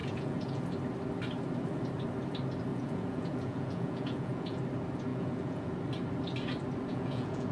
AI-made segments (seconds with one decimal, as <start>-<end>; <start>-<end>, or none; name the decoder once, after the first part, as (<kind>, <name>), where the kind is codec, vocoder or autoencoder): 0.0-0.6 (vocoder, Vocos); 2.7-4.6; 5.1-5.7; 6.9-7.5